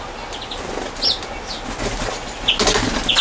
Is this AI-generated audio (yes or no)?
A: no